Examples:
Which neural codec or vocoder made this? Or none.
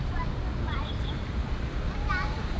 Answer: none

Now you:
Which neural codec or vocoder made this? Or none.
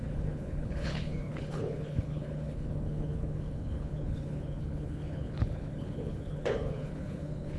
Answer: codec, HILCodec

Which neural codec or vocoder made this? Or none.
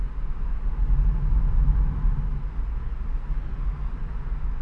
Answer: none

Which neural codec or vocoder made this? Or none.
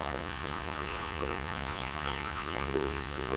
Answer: vocoder, Vocos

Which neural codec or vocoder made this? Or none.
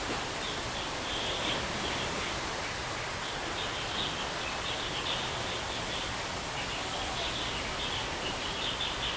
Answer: none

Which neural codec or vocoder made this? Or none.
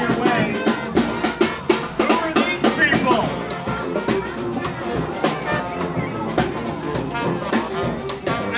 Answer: none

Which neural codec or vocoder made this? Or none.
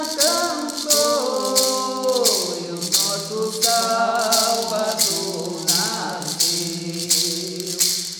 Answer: none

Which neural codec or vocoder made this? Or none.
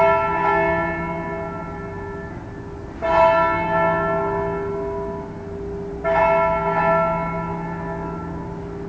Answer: none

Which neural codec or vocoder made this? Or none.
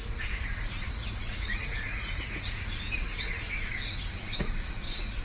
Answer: vocoder, Vocos